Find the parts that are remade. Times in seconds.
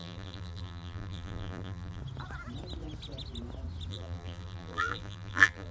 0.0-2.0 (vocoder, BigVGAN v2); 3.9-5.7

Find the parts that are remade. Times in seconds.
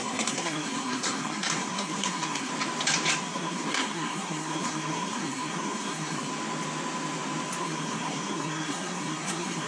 0.0-2.5 (codec, SNAC); 3.2-6.3; 7.6-9.7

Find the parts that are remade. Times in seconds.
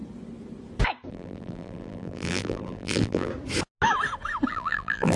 1.1-3.3 (vocoder, BigVGAN v2); 4.5-5.2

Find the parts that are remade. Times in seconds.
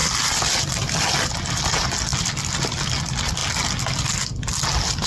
2.1-2.8 (vocoder, BigVGAN v2)